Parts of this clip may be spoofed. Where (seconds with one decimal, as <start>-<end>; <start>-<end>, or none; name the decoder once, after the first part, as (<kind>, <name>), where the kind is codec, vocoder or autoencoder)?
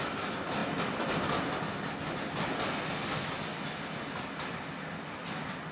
none